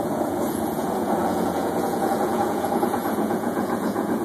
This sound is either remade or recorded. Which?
remade